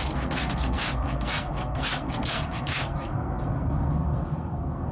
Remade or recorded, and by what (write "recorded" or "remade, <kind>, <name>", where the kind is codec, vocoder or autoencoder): remade, codec, SNAC